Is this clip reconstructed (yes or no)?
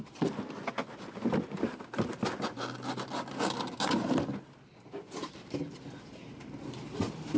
no